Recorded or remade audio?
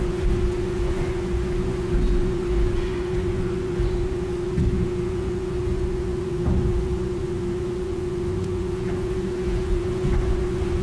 remade